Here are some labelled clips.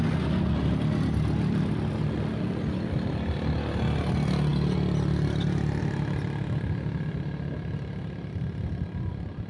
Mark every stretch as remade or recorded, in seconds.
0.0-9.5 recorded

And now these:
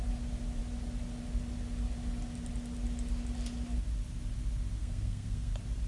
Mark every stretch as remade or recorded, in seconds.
0.0-4.8 recorded; 4.8-5.5 remade; 5.5-5.9 recorded

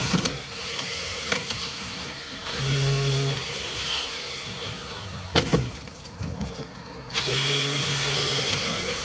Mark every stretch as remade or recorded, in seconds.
0.0-9.0 remade

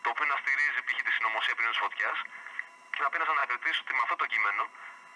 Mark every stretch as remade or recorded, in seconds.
0.0-5.2 recorded

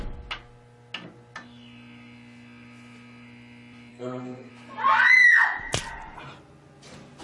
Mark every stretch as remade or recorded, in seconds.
0.0-3.9 recorded; 3.9-4.5 remade; 4.5-7.2 recorded

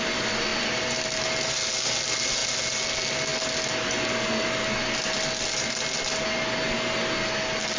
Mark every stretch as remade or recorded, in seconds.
0.0-7.8 recorded

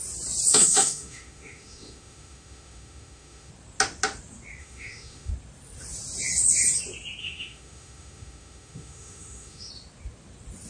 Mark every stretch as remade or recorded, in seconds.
0.0-0.5 recorded; 0.5-3.5 remade; 3.5-4.6 recorded; 4.6-5.3 remade; 5.3-7.2 recorded; 7.2-9.7 remade; 9.7-10.7 recorded